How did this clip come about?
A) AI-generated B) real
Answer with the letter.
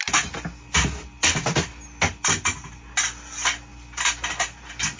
B